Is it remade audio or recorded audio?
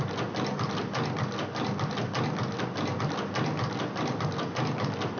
recorded